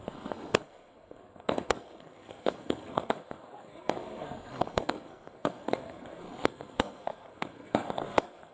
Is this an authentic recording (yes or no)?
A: no